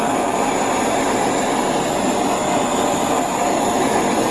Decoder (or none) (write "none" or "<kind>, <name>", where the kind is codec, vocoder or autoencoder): none